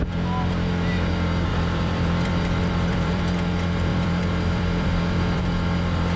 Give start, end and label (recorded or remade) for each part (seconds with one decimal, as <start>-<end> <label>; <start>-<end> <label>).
0.0-1.5 recorded; 1.5-3.2 remade; 3.2-3.9 recorded; 3.9-5.4 remade; 5.4-6.2 recorded